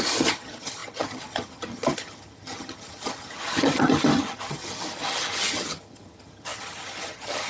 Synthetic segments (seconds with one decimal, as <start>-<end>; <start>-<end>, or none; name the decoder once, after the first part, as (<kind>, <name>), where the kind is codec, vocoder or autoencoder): 0.0-7.5 (vocoder, HiFi-GAN)